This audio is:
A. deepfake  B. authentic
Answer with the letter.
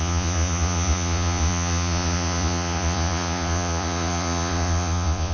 A